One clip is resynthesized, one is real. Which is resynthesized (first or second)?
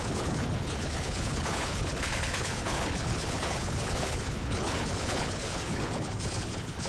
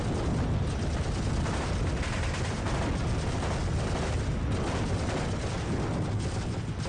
first